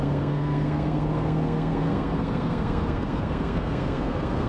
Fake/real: fake